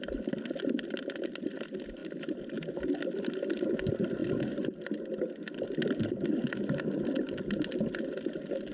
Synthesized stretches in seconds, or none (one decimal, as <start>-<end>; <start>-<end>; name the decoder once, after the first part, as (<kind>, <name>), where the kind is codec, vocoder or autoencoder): none